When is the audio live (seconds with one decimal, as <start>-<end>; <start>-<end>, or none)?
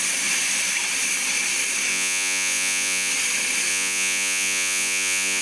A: 0.0-1.9; 3.1-3.7